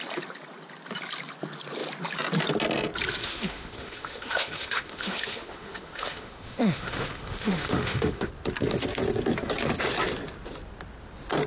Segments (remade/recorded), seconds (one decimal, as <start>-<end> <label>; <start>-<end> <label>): 0.0-3.2 recorded; 3.2-8.3 remade; 8.3-11.5 recorded